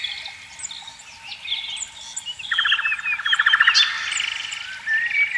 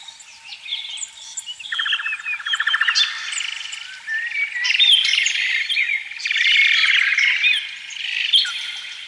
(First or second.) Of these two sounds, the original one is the first